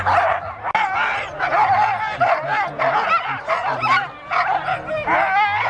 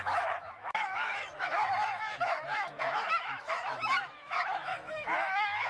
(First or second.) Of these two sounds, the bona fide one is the first